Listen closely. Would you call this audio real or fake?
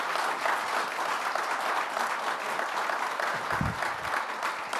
real